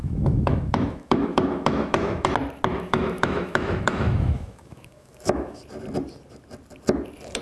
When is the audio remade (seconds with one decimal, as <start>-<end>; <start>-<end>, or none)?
0.0-2.3; 2.7-5.6